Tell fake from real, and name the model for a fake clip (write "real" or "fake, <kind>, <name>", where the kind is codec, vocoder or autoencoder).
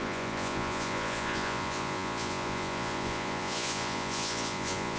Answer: fake, vocoder, Vocos